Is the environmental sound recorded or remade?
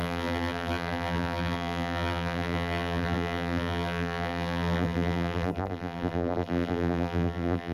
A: remade